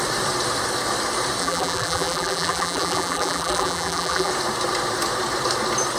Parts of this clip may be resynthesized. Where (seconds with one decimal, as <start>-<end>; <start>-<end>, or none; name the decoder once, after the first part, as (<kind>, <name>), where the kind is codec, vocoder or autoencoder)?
1.4-4.3 (vocoder, BigVGAN v2)